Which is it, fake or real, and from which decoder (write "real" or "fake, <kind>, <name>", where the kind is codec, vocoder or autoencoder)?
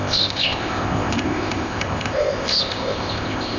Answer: fake, codec, ZipCodec